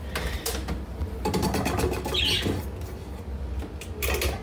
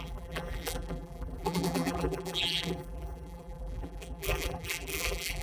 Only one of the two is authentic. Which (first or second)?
first